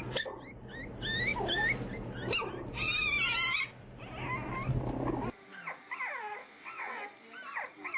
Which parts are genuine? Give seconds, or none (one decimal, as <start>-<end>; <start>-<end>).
0.0-6.4; 7.0-8.0